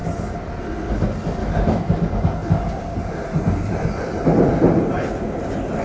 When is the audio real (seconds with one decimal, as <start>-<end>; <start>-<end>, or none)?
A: 0.0-1.4; 1.9-5.8

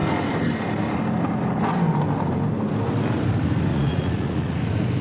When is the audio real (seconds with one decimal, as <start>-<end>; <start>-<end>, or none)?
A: 0.0-3.7; 4.6-5.0

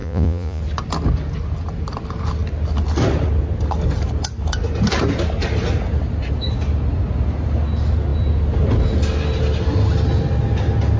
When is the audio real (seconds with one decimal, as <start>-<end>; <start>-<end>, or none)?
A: 0.6-11.0

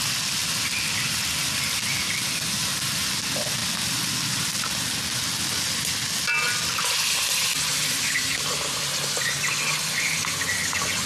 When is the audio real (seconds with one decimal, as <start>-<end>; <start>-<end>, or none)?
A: 0.0-11.1

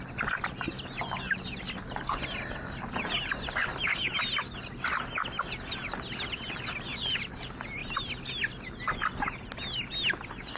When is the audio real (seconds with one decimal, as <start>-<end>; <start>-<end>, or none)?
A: 0.0-10.6